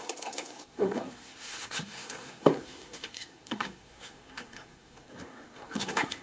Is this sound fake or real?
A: fake